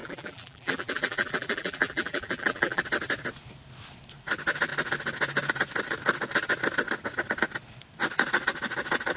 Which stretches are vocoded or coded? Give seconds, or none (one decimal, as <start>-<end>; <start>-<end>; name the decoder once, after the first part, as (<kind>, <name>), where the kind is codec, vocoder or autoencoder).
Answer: 0.0-2.8 (vocoder, BigVGAN v2)